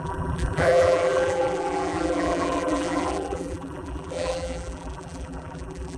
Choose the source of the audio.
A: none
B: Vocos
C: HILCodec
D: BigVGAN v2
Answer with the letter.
D